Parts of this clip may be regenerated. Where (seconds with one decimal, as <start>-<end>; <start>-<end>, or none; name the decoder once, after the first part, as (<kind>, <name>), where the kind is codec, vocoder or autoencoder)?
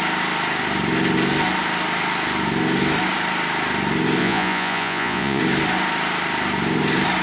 4.2-5.4 (vocoder, Vocos)